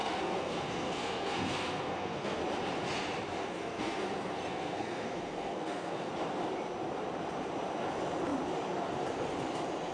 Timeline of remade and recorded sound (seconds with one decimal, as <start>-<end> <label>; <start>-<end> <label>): 0.0-2.4 remade; 2.4-3.4 recorded; 3.4-6.1 remade; 6.1-9.9 recorded